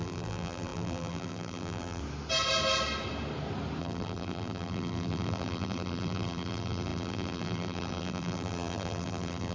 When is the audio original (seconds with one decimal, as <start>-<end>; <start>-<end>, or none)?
2.0-3.8